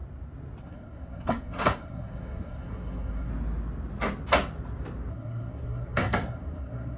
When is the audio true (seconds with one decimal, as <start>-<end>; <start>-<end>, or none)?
0.0-0.6; 3.3-5.1